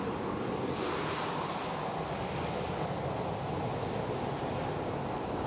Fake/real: real